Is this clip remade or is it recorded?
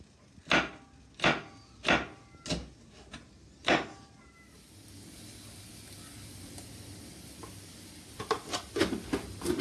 recorded